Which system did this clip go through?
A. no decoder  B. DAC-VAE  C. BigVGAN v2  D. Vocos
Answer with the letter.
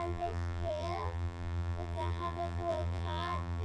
C